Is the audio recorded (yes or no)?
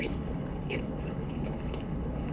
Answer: no